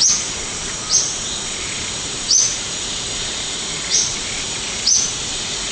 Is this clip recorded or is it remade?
remade